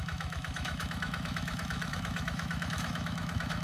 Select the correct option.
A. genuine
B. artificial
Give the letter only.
B